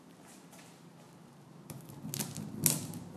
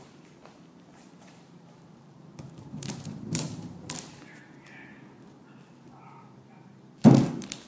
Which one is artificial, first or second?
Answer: second